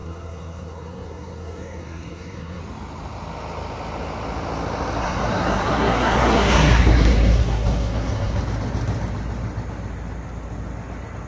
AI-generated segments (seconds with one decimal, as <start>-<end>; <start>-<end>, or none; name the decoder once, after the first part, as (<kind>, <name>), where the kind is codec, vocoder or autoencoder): 0.0-2.6 (codec, SNAC); 5.0-8.4